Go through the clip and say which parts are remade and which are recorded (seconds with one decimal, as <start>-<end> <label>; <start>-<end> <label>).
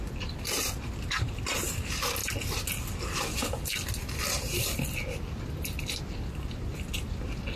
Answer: 0.0-7.6 recorded